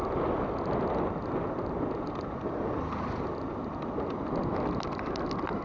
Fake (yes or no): no